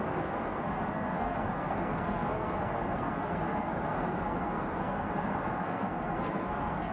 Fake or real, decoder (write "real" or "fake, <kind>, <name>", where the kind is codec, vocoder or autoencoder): fake, codec, SNAC